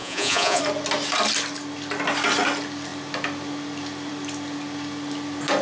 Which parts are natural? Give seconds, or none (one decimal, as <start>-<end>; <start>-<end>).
0.6-5.6